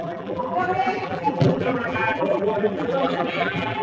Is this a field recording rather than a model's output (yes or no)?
no